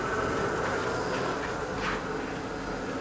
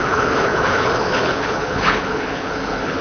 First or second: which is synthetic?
second